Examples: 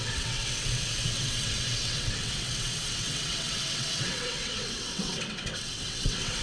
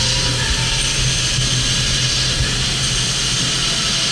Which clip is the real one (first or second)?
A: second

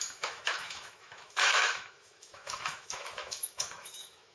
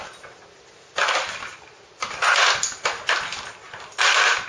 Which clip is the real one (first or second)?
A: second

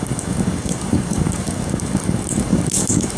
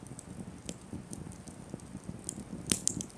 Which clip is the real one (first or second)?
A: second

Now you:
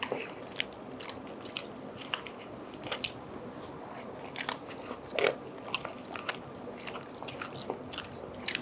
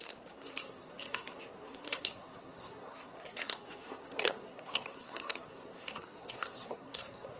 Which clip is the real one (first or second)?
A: first